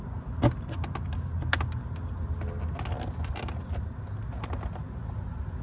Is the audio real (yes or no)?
yes